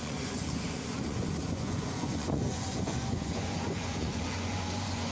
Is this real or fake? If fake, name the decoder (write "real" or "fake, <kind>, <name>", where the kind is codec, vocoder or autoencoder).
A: fake, vocoder, Vocos